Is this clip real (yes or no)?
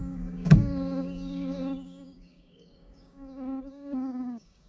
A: no